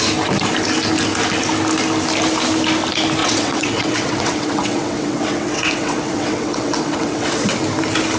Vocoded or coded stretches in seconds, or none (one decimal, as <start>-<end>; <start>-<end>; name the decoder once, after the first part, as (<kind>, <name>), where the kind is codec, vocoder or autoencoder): 3.2-7.6 (vocoder, WaveNeXt)